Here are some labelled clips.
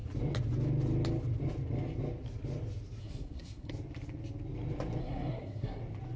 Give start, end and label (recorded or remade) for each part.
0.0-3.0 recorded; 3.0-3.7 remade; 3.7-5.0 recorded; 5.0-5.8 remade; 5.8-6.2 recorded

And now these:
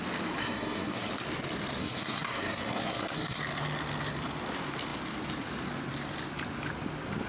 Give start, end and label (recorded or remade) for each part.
0.0-0.4 recorded; 0.4-1.1 remade; 1.1-1.8 recorded; 1.8-3.4 remade; 3.4-7.3 recorded

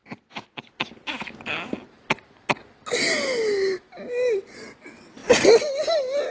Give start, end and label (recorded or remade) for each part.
0.0-6.3 recorded

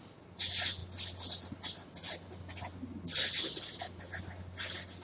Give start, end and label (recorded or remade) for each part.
0.0-5.0 recorded